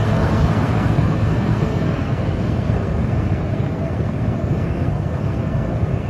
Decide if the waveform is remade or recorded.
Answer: remade